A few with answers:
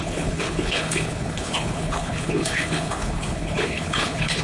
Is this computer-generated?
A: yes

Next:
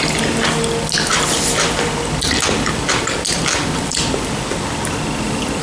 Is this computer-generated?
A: no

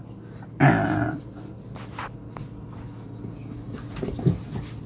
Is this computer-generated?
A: no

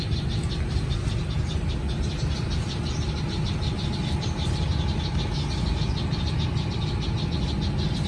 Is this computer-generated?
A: no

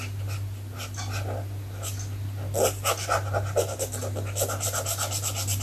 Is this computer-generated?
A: no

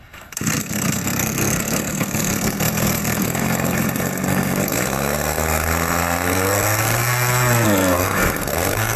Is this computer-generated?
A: yes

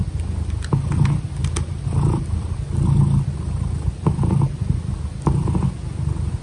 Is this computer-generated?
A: no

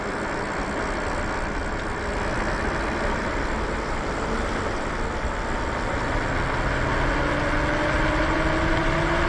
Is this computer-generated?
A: no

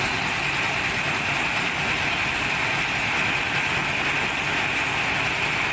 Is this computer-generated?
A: no